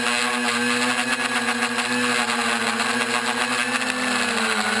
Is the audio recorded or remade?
recorded